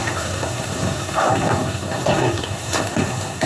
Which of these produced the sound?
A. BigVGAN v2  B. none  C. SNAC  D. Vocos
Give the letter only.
C